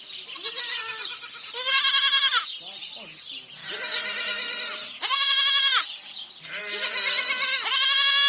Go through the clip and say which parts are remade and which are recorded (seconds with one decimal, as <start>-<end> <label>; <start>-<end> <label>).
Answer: 0.0-8.3 recorded